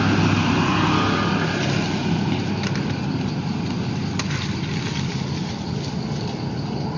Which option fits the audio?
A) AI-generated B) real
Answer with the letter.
B